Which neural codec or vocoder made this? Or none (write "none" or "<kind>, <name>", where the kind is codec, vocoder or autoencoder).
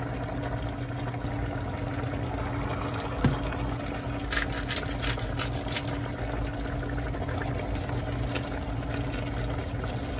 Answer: none